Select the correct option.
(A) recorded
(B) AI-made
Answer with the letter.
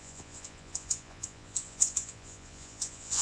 B